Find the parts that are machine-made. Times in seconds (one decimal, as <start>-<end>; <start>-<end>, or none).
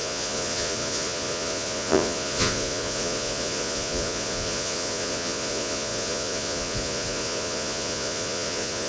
0.0-8.9